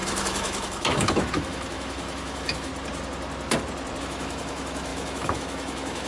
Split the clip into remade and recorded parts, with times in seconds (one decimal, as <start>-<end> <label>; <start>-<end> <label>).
0.0-2.7 remade; 2.7-4.0 recorded; 4.0-6.1 remade